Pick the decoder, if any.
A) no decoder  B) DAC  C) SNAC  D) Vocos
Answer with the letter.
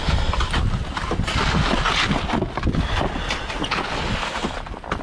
A